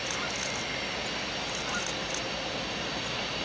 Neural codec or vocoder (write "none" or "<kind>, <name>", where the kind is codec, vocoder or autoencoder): none